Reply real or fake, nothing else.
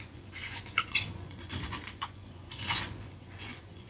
fake